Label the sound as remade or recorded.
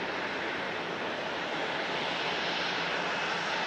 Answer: recorded